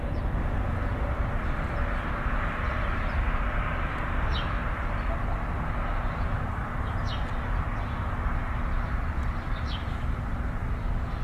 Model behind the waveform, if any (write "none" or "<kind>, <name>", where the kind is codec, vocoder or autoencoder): none